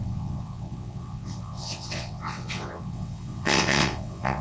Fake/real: fake